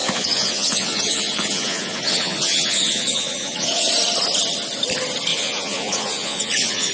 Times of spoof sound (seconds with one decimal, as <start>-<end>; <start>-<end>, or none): 0.0-3.9; 5.3-6.9